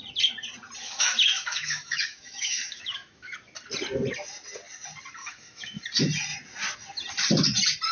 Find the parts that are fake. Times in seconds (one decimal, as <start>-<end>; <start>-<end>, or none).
0.8-3.4; 5.2-5.8